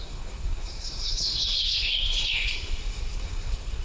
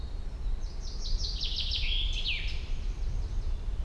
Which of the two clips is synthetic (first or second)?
first